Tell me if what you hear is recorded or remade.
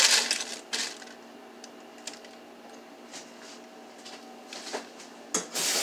recorded